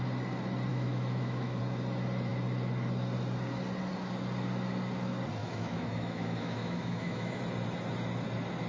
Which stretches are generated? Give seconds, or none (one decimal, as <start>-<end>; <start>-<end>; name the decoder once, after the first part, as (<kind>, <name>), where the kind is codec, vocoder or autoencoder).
0.7-1.6 (autoencoder, DAC-VAE); 5.4-7.4